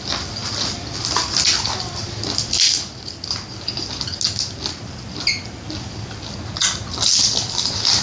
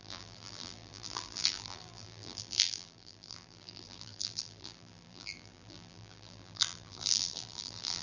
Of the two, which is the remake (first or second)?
second